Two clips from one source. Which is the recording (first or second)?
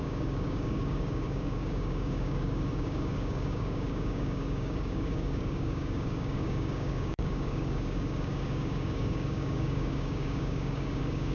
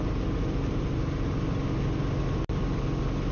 second